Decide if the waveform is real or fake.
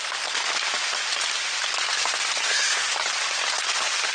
real